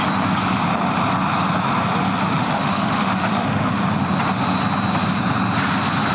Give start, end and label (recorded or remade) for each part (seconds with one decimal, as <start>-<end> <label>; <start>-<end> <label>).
0.0-2.2 recorded; 2.2-3.8 remade; 3.8-6.1 recorded